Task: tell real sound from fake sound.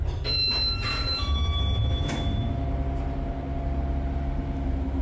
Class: real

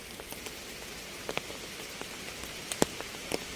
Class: real